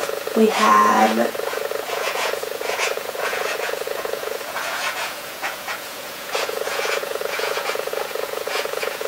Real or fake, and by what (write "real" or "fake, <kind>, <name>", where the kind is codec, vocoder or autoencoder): fake, vocoder, Vocos